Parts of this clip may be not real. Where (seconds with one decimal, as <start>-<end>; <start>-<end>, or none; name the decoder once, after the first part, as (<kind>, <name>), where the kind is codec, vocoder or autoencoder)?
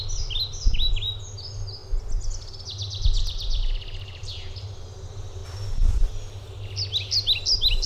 none